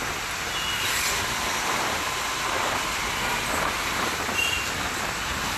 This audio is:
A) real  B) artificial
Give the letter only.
A